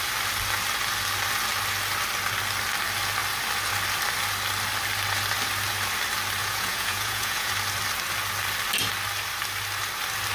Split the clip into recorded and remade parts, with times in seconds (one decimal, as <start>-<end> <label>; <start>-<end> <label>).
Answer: 0.0-6.4 recorded; 6.4-7.5 remade; 7.5-10.3 recorded